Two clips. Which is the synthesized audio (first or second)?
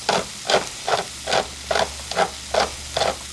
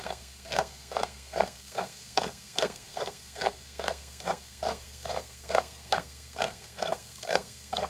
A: second